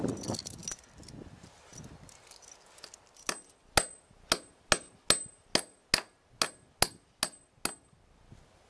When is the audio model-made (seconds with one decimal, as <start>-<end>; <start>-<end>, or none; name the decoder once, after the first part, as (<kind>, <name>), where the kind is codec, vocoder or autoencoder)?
none

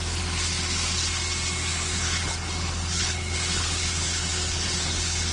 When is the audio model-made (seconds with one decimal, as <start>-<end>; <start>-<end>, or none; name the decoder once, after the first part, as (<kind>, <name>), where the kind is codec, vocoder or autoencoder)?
1.7-5.3 (codec, HILCodec)

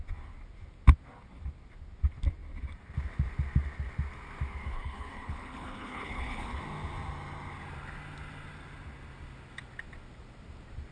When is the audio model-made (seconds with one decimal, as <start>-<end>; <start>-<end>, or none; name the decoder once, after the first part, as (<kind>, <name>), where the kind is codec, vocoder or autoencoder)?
4.7-6.6 (codec, HILCodec)

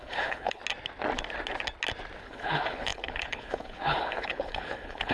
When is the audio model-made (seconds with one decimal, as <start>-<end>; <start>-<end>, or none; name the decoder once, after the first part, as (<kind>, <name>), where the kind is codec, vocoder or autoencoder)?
0.0-0.6 (codec, HILCodec); 2.2-5.1

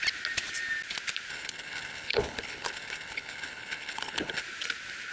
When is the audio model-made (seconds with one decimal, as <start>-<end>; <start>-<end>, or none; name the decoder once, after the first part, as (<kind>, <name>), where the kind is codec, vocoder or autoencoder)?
1.3-4.4 (codec, HILCodec)

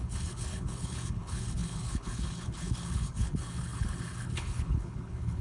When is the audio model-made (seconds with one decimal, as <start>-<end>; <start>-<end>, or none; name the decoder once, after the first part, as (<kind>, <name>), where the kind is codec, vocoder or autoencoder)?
0.0-5.4 (codec, HILCodec)

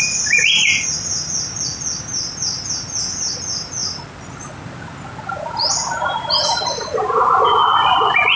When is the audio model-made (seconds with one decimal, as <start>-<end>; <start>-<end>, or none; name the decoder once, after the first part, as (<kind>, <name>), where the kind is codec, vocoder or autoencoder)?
none